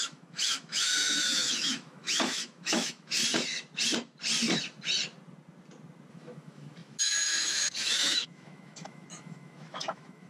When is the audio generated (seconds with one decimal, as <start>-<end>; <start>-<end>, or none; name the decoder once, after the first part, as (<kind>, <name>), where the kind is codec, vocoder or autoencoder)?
0.0-3.2 (autoencoder, DAC-VAE); 6.1-10.3